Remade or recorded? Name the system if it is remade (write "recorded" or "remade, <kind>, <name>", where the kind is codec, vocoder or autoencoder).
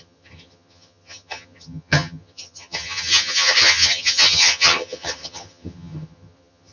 remade, vocoder, HiFi-GAN